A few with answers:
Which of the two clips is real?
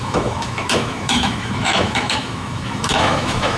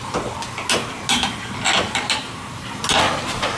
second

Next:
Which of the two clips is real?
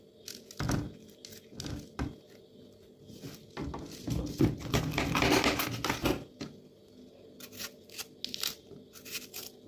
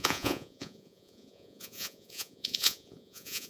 first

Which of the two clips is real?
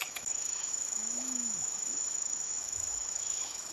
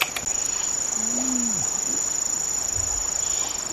second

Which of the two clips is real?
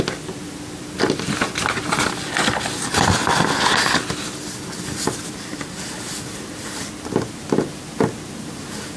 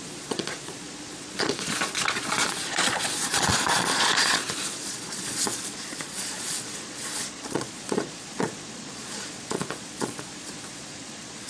first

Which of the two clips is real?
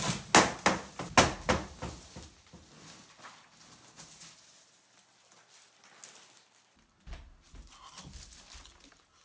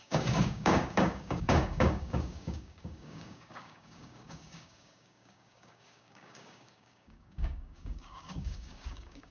first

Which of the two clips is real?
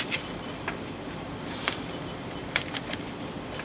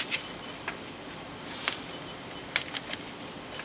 second